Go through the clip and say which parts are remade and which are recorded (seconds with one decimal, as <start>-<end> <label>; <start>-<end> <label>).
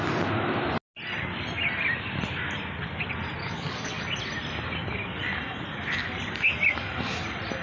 0.0-3.4 recorded; 3.4-4.0 remade; 4.0-7.6 recorded